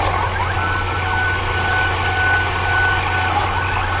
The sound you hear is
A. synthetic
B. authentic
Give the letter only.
B